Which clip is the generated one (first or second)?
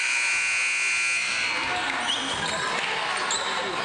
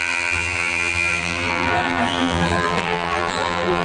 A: second